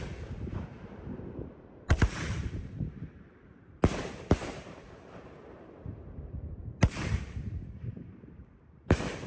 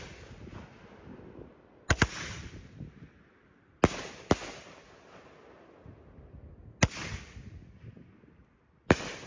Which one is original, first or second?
second